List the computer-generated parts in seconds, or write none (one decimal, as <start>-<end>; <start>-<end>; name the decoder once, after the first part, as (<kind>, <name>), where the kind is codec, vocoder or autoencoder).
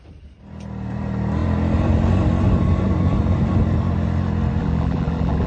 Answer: 4.6-5.5 (vocoder, BigVGAN v2)